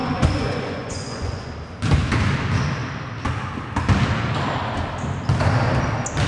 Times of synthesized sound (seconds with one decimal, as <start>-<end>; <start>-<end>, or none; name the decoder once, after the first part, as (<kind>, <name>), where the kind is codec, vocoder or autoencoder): 0.0-1.5 (vocoder, Vocos)